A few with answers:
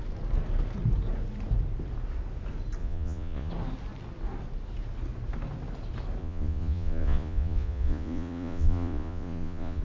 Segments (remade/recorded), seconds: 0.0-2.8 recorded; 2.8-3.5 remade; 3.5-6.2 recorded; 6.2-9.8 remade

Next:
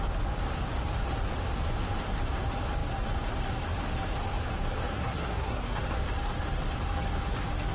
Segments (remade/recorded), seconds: 0.0-4.9 recorded; 4.9-5.8 remade; 5.8-7.7 recorded

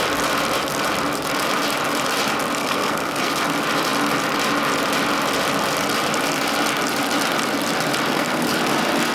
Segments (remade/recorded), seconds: 0.0-2.6 recorded; 2.6-3.3 remade; 3.3-8.1 recorded; 8.1-8.6 remade; 8.6-9.1 recorded

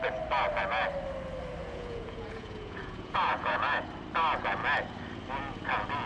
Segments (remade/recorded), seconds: 0.0-1.6 recorded; 1.6-3.9 remade; 3.9-6.1 recorded

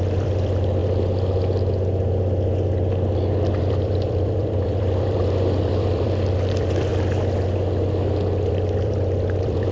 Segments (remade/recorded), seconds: 0.0-0.8 remade; 0.8-3.6 recorded; 3.6-6.9 remade; 6.9-8.5 recorded; 8.5-9.7 remade

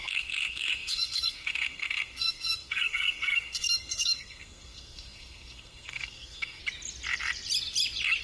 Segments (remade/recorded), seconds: 0.0-6.6 remade; 6.6-8.2 recorded

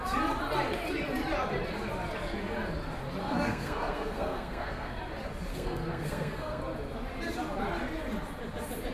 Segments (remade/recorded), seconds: 0.0-3.2 recorded; 3.2-5.0 remade; 5.0-5.5 recorded; 5.5-6.6 remade; 6.6-8.9 recorded

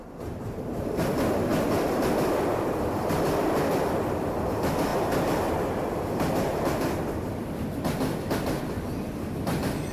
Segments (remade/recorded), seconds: 0.0-9.9 recorded